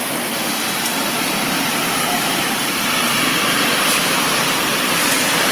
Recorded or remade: remade